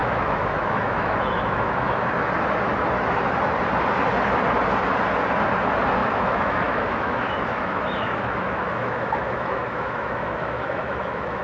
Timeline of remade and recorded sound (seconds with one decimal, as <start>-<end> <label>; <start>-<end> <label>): 0.0-2.0 remade; 2.0-6.0 recorded; 6.0-11.4 remade